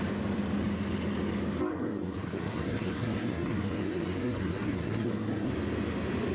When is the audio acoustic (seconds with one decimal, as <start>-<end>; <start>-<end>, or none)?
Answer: 0.0-1.7; 5.5-6.3